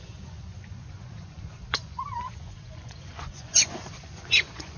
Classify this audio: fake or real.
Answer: fake